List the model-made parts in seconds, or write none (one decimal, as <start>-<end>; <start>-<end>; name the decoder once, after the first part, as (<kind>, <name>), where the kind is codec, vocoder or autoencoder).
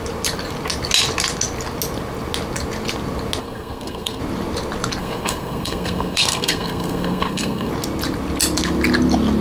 3.4-4.2 (codec, SNAC); 5.0-7.7